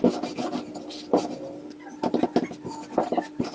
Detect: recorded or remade recorded